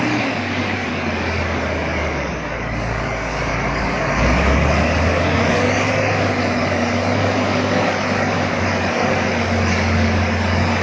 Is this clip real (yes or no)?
no